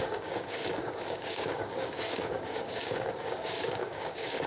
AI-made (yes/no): yes